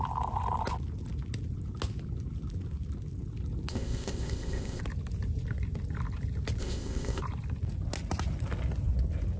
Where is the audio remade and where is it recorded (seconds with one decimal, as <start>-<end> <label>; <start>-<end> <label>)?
0.0-3.7 recorded; 3.7-4.8 remade; 4.8-6.6 recorded; 6.6-7.2 remade; 7.2-9.4 recorded